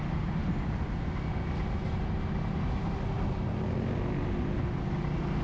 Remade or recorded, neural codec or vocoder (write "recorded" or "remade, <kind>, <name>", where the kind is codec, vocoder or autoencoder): recorded